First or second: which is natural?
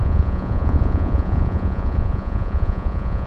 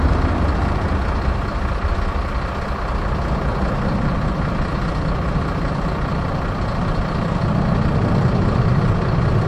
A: second